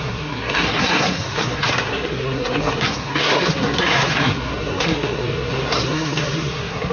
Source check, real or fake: fake